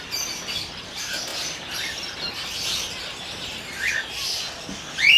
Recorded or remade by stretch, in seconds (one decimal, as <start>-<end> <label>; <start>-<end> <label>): 0.0-1.3 recorded; 1.3-3.9 remade; 3.9-5.2 recorded